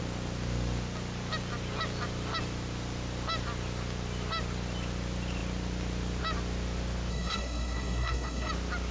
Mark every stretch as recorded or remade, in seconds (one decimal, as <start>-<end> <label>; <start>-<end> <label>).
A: 0.0-7.1 recorded; 7.1-8.5 remade; 8.5-8.9 recorded